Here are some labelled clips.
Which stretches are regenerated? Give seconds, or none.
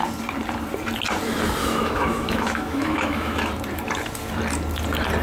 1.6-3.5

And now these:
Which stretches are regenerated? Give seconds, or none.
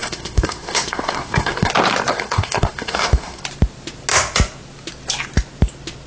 0.0-1.7; 2.1-3.4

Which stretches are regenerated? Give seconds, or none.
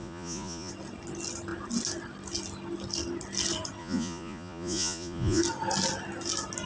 0.0-0.7; 3.8-5.4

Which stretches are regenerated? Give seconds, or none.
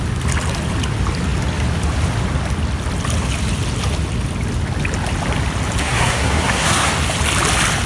5.8-6.9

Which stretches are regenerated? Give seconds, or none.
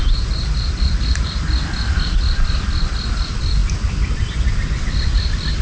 none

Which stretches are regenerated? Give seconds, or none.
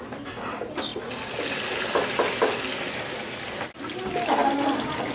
none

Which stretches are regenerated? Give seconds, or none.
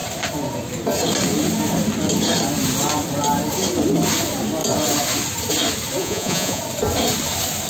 6.0-6.6